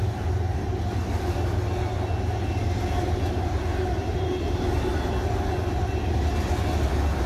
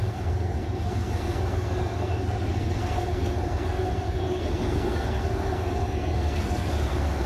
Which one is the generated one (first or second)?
second